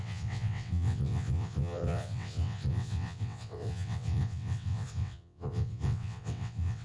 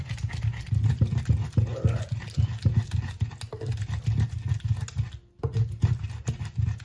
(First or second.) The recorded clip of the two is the second